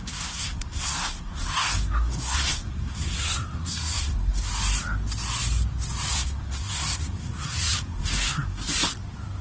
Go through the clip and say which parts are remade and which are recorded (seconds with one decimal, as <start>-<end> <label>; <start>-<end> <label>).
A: 0.0-4.5 remade; 4.5-6.1 recorded; 6.1-8.6 remade; 8.6-9.4 recorded